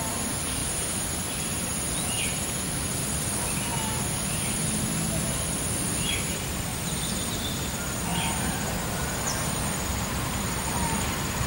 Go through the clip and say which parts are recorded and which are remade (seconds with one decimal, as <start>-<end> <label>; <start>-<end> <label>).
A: 0.0-0.6 recorded; 0.6-1.3 remade; 1.3-6.7 recorded; 6.7-7.4 remade; 7.4-8.1 recorded; 8.1-9.5 remade; 9.5-11.5 recorded